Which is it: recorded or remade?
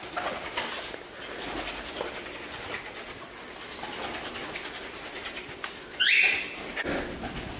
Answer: recorded